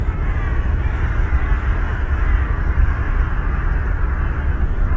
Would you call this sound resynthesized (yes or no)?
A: yes